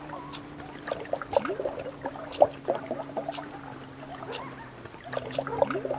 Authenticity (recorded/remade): recorded